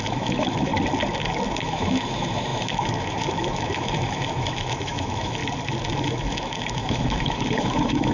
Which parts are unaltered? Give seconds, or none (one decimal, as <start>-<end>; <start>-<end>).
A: 0.7-1.6; 5.4-6.0

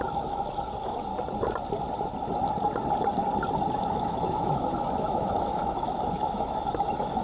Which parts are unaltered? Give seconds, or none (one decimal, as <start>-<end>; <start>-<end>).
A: 1.1-3.8

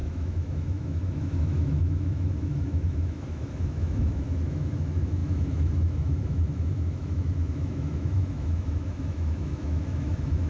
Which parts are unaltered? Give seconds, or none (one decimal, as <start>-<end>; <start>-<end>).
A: none

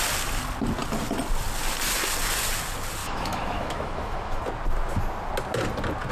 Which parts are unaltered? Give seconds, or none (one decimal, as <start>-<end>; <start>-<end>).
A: 0.0-3.0; 4.4-6.1